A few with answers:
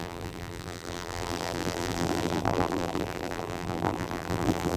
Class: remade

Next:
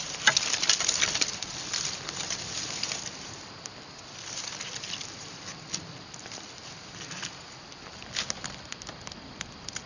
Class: recorded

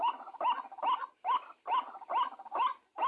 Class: recorded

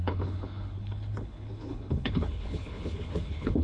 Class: remade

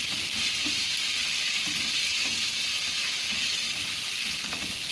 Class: recorded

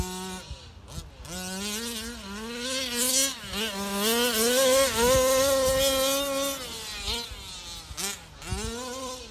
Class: recorded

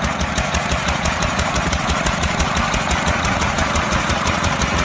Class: remade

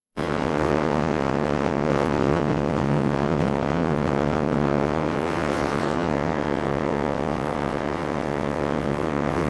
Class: remade